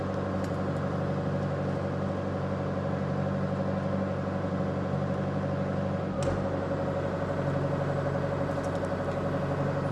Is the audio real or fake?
real